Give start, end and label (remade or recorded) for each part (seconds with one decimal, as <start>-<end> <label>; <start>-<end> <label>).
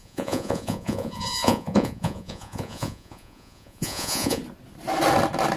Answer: 0.0-4.4 remade; 4.4-5.6 recorded